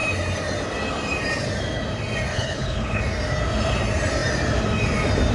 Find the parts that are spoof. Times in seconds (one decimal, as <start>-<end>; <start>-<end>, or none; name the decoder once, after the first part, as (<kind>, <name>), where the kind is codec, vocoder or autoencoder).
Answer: 2.3-3.0 (codec, HILCodec)